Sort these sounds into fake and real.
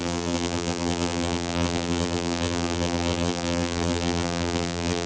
fake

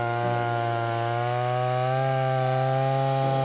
real